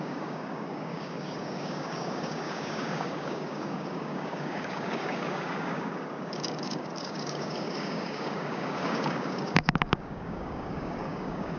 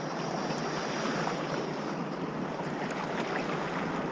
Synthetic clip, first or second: first